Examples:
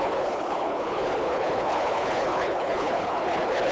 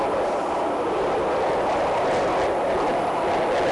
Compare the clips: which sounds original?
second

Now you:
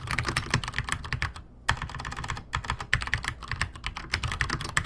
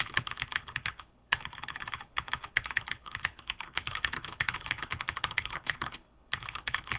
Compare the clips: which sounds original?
first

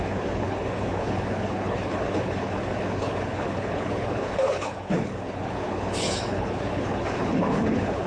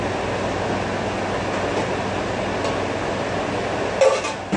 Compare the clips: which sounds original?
second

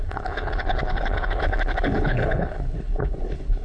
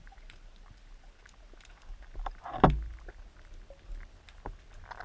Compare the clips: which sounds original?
second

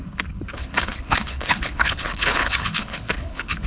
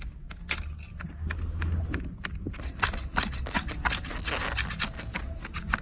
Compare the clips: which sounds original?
second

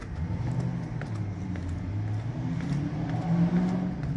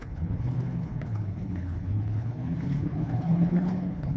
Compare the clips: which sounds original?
first